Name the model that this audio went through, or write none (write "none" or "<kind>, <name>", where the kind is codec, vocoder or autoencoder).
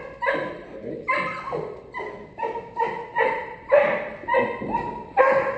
none